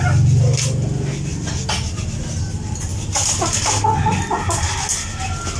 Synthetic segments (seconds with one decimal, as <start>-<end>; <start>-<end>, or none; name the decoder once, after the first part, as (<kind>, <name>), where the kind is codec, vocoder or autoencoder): none